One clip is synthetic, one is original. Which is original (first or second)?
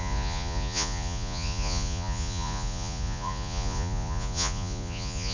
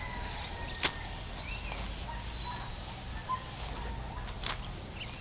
second